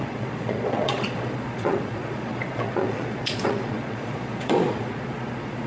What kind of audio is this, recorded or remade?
remade